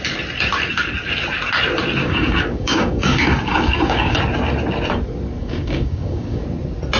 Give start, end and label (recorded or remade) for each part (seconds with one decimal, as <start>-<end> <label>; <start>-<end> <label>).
0.0-2.0 recorded; 2.0-4.2 remade; 4.2-5.4 recorded; 5.4-6.4 remade; 6.4-7.0 recorded